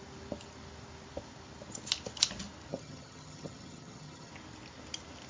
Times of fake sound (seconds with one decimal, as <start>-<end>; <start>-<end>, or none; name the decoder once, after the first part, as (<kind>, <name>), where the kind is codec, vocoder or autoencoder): 2.7-4.3 (vocoder, HiFi-GAN)